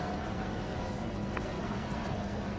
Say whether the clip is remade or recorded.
remade